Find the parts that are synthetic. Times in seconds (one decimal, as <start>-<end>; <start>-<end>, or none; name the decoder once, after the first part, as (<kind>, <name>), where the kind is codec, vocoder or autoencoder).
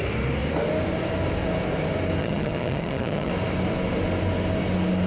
2.2-3.3 (vocoder, HiFi-GAN)